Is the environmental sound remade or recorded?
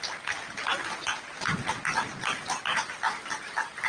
recorded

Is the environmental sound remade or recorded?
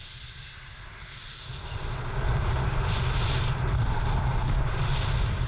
recorded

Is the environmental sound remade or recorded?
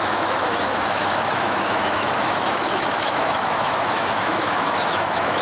remade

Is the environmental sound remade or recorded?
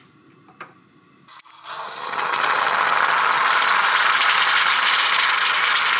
recorded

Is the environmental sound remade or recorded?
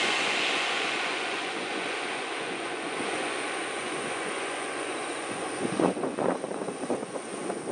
remade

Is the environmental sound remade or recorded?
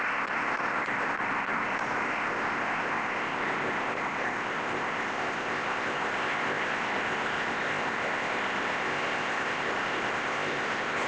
remade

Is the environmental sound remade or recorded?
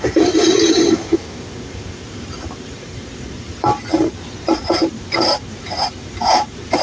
remade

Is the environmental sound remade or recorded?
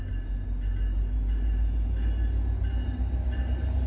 recorded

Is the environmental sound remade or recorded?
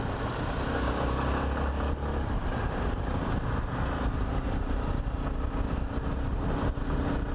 recorded